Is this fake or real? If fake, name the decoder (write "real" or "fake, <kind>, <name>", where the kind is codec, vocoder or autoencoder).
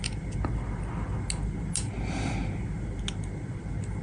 real